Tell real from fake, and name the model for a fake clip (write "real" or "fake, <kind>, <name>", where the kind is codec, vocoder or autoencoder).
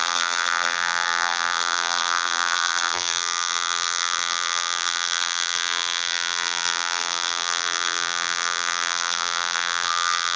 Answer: fake, vocoder, BigVGAN v2